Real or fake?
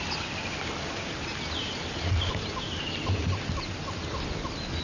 real